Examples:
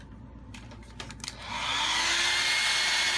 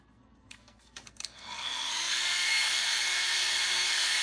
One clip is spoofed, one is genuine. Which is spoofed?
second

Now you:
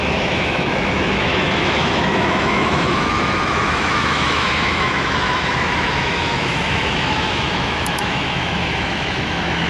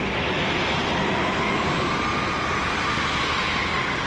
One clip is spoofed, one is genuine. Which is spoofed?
first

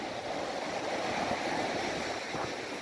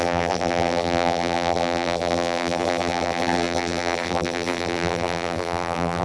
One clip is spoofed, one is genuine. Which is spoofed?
second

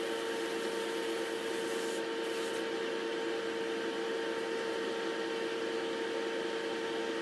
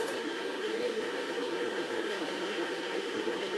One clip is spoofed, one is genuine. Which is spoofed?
second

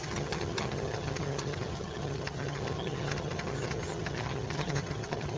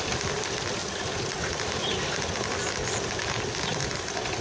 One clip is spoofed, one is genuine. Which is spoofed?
first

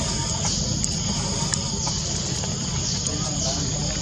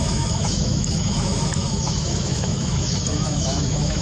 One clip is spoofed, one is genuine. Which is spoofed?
second